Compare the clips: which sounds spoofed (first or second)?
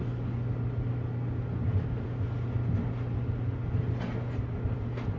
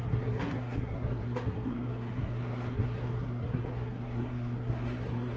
second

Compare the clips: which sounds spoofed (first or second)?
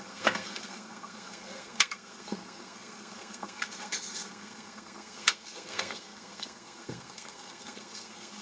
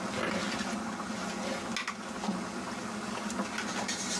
first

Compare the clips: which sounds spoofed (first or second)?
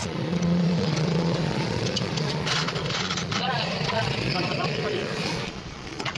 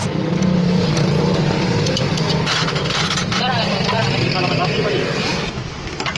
first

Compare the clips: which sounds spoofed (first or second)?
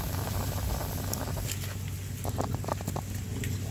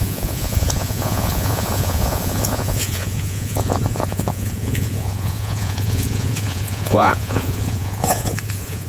second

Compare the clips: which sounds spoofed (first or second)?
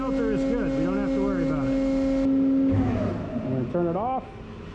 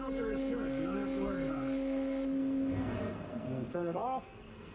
second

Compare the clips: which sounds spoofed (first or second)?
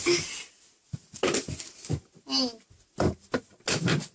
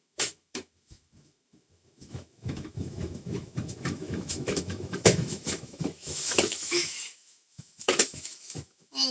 second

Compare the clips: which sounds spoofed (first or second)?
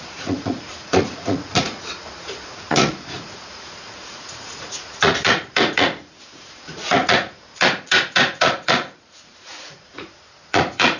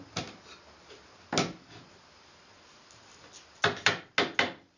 first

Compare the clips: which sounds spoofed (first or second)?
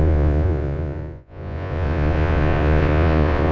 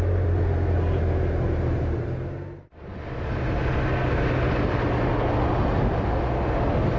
first